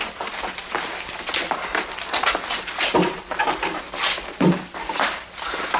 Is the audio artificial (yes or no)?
no